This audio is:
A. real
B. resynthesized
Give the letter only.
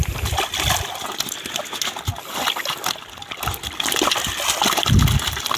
A